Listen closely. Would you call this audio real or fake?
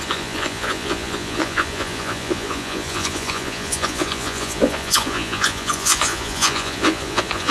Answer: fake